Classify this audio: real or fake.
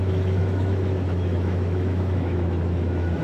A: fake